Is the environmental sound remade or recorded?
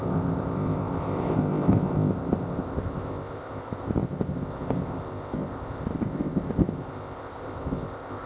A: remade